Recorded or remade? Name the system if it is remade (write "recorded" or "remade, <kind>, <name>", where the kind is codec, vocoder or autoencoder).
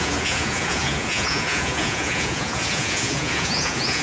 remade, vocoder, Vocos